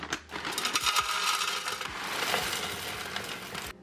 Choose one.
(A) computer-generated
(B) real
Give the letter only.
B